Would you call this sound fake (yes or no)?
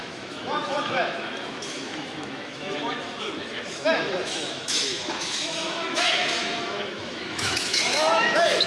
yes